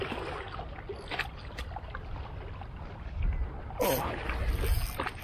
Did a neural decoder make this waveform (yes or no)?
no